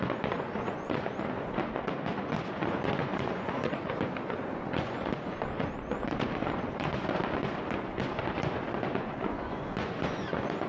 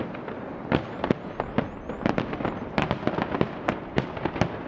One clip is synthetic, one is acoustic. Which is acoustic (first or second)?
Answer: second